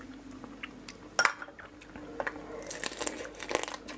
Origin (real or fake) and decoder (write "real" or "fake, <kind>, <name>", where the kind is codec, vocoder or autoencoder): real